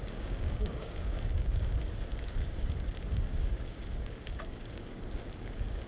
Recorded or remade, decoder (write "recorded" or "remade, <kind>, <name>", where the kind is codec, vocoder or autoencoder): remade, codec, DAC